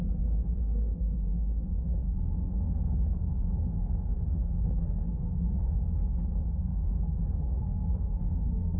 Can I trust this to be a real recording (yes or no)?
no